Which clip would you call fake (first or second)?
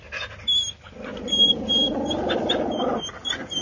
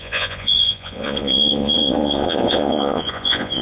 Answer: second